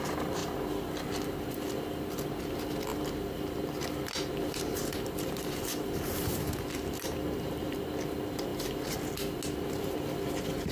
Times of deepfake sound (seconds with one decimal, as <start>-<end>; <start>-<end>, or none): 0.4-1.5; 2.9-3.8; 4.8-7.8; 8.5-9.1